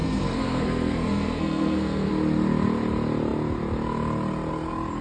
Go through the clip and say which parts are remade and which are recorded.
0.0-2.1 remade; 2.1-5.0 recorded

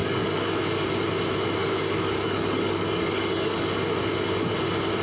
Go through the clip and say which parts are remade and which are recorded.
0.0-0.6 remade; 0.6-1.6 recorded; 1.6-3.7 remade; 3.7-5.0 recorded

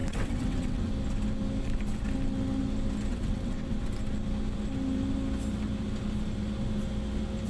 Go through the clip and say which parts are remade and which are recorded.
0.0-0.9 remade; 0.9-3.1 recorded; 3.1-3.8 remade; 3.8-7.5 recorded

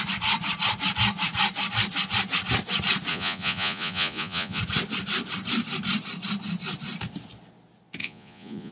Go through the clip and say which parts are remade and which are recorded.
0.0-3.1 recorded; 3.1-4.6 remade; 4.6-8.0 recorded; 8.0-8.7 remade